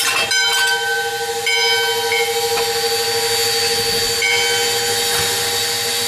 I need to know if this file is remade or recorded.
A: recorded